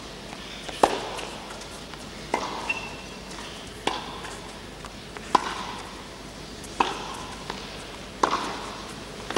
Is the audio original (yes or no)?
yes